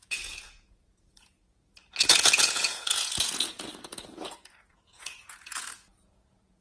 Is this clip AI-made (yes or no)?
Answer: yes